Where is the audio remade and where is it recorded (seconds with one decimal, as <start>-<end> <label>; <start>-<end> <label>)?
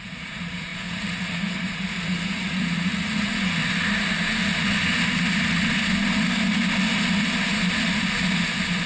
0.0-3.6 remade; 3.6-8.9 recorded